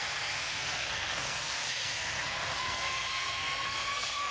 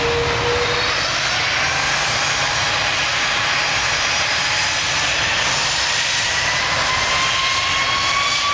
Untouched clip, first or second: second